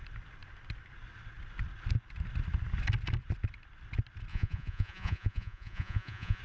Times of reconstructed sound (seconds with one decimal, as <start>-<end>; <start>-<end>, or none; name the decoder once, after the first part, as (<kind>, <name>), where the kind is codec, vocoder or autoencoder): 4.3-6.4 (vocoder, Vocos)